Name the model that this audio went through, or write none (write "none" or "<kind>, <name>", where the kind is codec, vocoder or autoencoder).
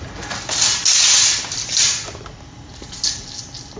none